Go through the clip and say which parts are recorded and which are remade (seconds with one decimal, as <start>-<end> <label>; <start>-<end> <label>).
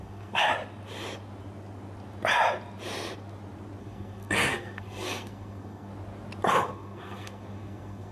0.0-0.5 remade; 0.5-3.8 recorded; 3.8-5.9 remade; 5.9-6.6 recorded; 6.6-8.1 remade